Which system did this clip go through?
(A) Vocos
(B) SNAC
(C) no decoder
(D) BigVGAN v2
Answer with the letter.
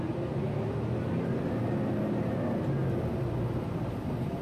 C